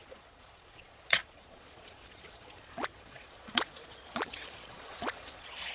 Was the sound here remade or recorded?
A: remade